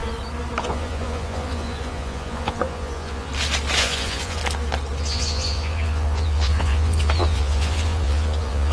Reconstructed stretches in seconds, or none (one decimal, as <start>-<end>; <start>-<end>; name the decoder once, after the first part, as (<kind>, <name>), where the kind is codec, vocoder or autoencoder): 0.6-3.3 (vocoder, Vocos); 3.8-4.4; 5.0-8.7